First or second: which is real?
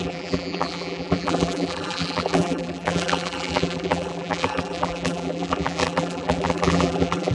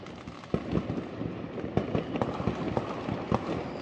second